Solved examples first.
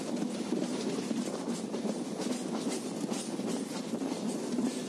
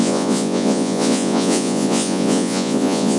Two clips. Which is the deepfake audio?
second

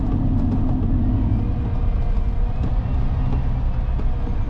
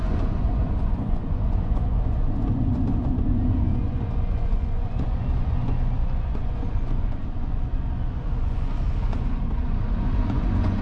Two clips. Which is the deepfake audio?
second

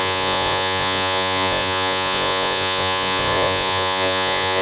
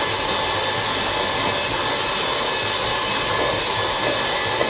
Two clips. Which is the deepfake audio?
first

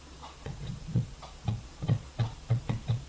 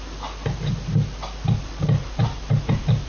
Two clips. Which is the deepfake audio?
first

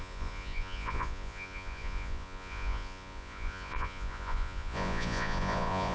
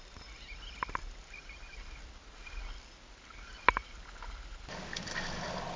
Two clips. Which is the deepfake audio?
first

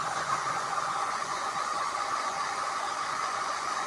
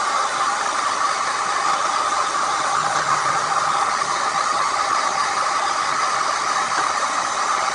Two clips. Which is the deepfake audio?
first